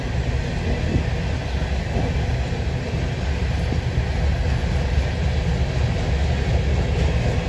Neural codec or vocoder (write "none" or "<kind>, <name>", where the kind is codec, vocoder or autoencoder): none